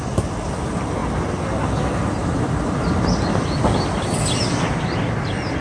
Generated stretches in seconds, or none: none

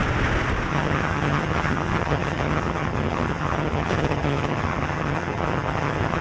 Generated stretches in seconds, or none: 0.7-6.2 (vocoder, HiFi-GAN)

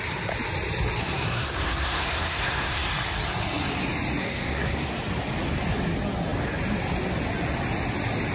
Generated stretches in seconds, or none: 1.0-2.9 (codec, SNAC); 4.2-4.9

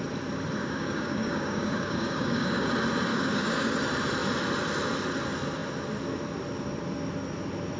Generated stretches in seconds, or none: 0.6-2.7 (codec, DAC); 3.1-3.8

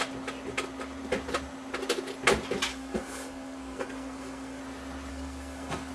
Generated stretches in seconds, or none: 2.7-4.6 (codec, SNAC); 5.1-5.9